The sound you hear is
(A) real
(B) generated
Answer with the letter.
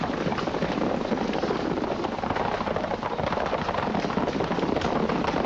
A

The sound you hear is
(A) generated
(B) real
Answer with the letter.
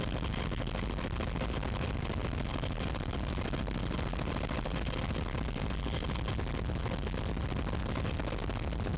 B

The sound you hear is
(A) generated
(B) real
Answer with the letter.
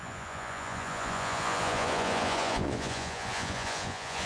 A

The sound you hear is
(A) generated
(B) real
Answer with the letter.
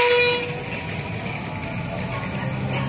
B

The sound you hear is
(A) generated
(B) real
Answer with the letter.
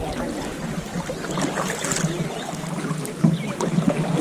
B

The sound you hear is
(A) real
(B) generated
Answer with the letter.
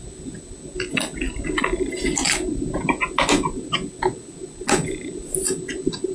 A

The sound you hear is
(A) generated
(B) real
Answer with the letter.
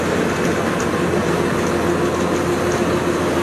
B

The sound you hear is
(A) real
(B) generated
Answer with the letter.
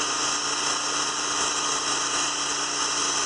A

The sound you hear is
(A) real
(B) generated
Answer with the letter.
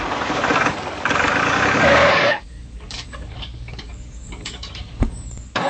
B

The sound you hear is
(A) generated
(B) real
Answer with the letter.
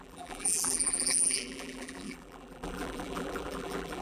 A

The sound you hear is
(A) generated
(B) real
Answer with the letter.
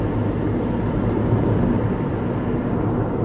B